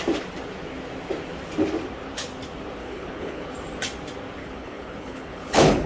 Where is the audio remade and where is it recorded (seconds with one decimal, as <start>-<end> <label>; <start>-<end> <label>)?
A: 0.0-2.8 recorded; 2.8-3.5 remade; 3.5-4.4 recorded; 4.4-5.9 remade